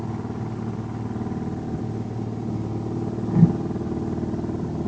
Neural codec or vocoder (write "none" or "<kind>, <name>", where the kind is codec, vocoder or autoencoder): none